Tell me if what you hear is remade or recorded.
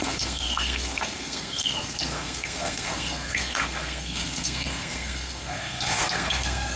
remade